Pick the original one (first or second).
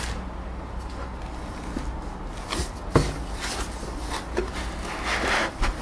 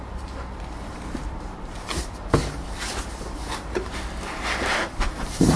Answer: first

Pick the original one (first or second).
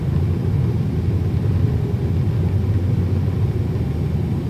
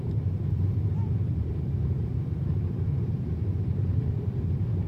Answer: first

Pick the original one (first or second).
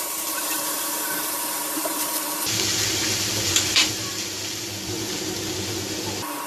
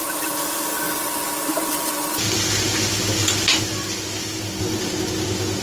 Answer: second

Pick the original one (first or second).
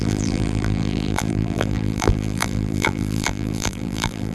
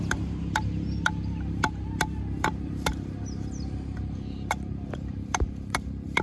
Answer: second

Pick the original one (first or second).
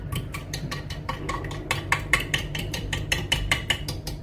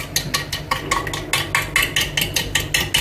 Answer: second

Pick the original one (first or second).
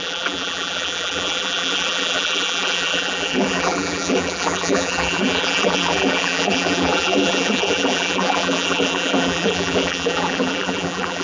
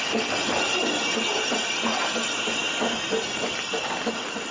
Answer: second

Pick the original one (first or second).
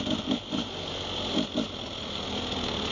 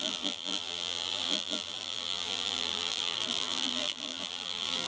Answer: first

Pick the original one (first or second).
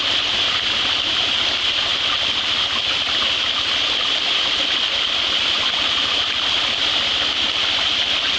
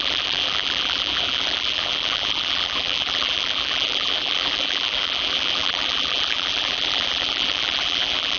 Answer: first